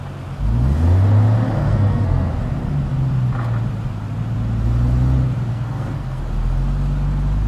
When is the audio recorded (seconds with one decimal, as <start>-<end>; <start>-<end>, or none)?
0.0-1.6; 2.3-5.5; 6.2-7.5